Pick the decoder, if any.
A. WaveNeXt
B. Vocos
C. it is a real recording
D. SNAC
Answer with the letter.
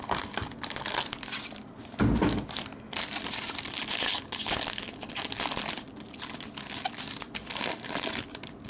C